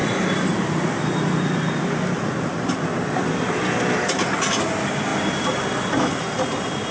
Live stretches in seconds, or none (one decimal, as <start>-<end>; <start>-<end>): 0.0-6.9